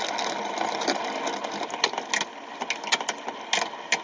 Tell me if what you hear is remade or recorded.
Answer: recorded